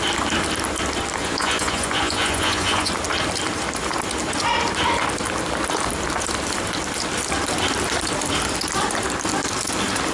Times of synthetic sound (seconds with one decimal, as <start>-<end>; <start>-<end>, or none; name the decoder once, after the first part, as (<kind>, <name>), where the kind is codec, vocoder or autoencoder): 1.2-2.9 (vocoder, Vocos)